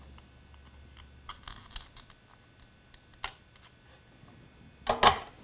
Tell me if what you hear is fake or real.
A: real